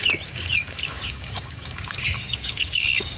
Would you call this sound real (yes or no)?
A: no